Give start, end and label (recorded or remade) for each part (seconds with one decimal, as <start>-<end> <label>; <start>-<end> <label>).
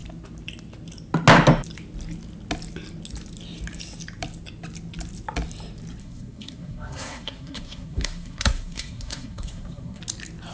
0.0-6.0 recorded; 6.0-10.0 remade; 10.0-10.5 recorded